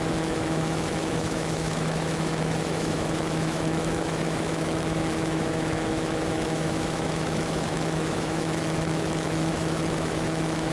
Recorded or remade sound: remade